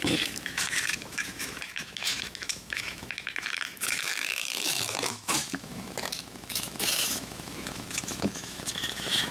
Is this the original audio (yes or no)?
no